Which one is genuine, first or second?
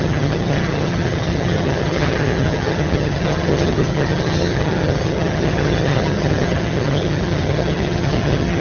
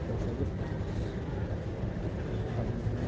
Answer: second